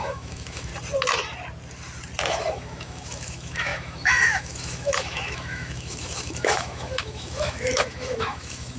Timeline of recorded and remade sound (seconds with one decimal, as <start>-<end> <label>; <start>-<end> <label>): 0.0-0.7 remade; 0.7-2.3 recorded; 2.3-8.8 remade